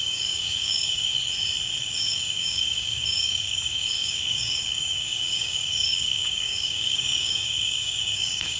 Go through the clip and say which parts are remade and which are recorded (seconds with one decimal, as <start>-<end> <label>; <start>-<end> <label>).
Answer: 0.0-1.1 remade; 1.1-1.8 recorded; 1.8-8.6 remade